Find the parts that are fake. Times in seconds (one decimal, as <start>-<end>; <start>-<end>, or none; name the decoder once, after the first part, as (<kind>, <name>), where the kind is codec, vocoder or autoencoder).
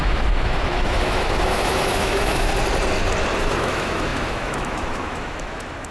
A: 0.0-2.5 (autoencoder, DAC-VAE); 3.4-5.9